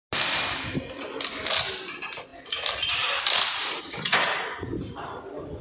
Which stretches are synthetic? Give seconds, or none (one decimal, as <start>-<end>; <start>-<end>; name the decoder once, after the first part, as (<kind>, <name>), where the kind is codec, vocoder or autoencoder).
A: none